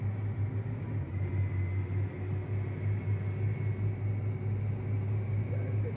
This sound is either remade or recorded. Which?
recorded